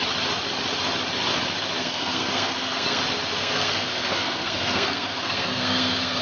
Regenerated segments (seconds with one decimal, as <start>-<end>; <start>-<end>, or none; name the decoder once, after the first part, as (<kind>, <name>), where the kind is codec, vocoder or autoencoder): 1.8-3.0 (codec, SNAC); 3.4-6.2